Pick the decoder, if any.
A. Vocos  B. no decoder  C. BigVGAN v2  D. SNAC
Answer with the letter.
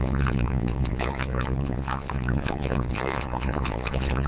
A